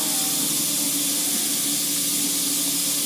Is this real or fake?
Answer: fake